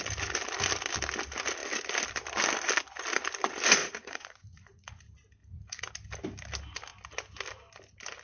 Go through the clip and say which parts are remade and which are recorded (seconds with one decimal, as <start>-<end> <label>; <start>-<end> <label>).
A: 0.0-3.8 recorded; 3.8-5.0 remade; 5.0-5.4 recorded; 5.4-5.9 remade; 5.9-8.2 recorded